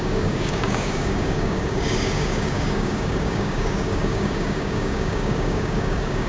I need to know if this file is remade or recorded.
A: remade